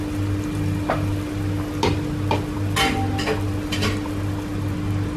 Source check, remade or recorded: recorded